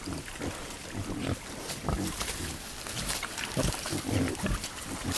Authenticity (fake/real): real